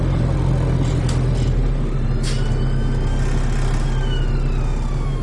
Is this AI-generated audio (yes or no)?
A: no